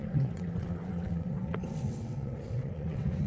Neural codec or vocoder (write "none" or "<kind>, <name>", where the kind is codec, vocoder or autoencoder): vocoder, WaveNeXt